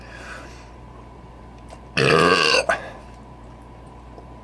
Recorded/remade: remade